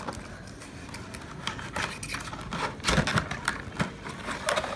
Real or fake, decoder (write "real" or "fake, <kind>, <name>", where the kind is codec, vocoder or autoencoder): real